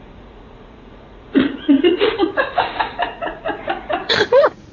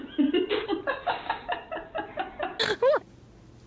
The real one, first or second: second